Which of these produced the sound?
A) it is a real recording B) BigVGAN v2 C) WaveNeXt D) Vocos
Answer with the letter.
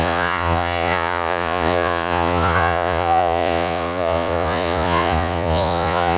D